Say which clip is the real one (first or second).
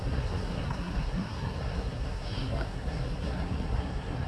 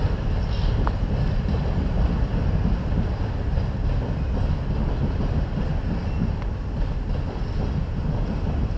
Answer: second